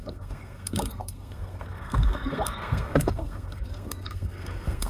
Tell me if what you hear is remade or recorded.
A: remade